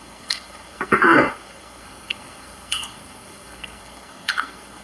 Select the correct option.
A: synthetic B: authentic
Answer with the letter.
A